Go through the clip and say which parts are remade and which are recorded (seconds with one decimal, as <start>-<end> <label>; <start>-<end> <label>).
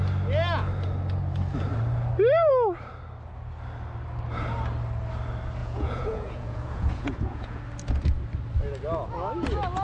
0.0-5.6 recorded; 5.6-7.6 remade; 7.6-9.8 recorded